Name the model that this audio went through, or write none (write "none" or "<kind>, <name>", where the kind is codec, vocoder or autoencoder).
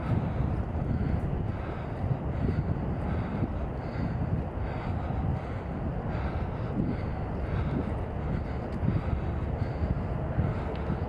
none